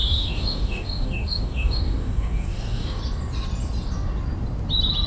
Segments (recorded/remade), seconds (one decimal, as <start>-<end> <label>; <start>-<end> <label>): 0.0-3.0 remade; 3.0-5.1 recorded